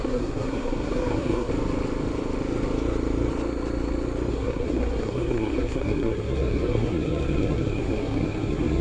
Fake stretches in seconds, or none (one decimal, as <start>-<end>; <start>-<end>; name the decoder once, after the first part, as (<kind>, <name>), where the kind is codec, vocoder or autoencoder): 0.0-1.5 (codec, SNAC); 4.3-8.8